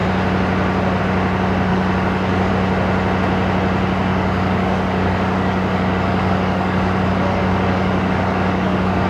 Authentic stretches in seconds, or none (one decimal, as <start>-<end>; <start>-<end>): 0.0-1.7; 2.5-4.1